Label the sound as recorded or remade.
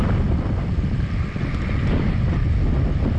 recorded